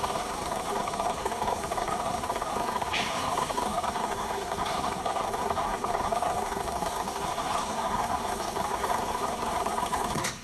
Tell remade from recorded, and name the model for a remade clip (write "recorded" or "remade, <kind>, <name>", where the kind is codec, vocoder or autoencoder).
remade, codec, SNAC